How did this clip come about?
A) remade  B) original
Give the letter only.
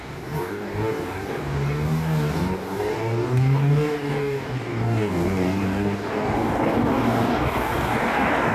A